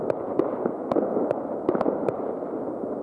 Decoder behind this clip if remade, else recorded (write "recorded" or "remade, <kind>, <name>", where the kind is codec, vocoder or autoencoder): recorded